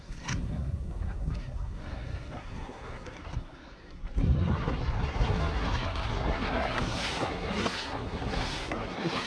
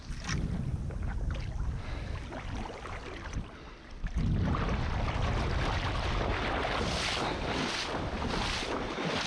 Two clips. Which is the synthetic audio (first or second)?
first